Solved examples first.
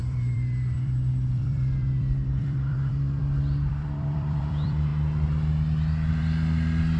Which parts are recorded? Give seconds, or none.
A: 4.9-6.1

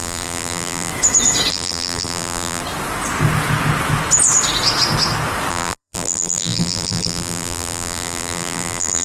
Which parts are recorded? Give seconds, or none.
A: 0.9-1.5; 2.6-5.5

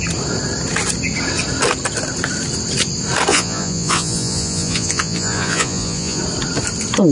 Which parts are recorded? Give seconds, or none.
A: 0.0-3.3; 6.2-7.1

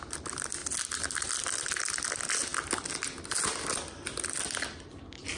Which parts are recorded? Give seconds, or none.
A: 0.0-5.4

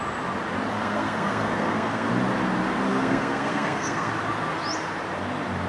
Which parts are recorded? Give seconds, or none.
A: 0.0-0.7; 2.1-2.9; 4.1-5.7

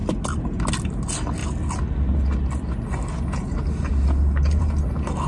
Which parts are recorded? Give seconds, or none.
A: 0.0-5.3

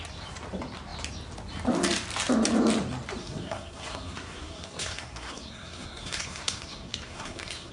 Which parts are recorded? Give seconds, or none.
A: 0.0-3.2

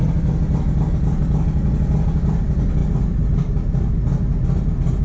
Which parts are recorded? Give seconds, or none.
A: 0.0-5.0